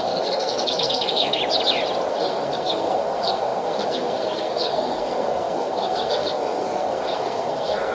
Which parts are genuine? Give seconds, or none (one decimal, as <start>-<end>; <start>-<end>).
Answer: 1.4-2.1

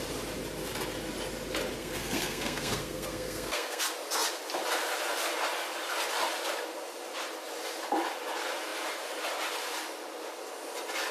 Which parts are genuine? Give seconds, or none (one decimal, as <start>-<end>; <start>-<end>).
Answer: 0.0-1.8; 3.8-11.1

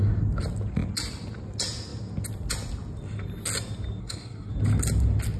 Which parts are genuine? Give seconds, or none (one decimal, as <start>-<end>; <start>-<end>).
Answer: 0.0-4.0; 4.5-5.4

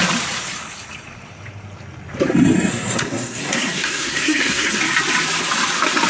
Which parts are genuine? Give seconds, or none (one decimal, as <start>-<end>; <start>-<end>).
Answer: 0.0-2.7; 4.8-6.1

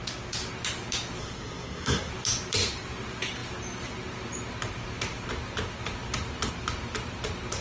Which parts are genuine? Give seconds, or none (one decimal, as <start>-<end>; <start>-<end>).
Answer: 0.0-1.2; 2.1-7.6

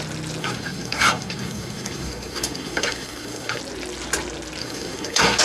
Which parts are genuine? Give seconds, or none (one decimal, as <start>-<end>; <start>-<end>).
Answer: 0.0-0.4; 3.6-4.6